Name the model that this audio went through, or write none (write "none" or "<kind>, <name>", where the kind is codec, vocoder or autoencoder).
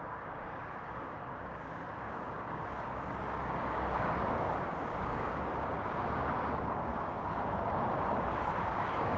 codec, DAC